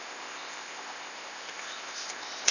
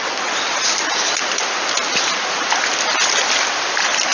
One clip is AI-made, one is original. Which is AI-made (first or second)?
first